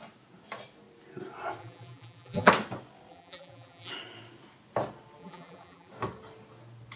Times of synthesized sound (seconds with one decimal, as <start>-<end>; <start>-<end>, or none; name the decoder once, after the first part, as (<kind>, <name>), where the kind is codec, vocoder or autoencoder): 1.6-2.5 (vocoder, BigVGAN v2); 3.1-3.9; 5.2-5.9